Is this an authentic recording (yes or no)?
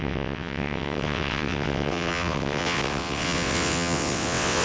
no